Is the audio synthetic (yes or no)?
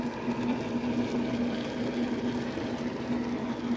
no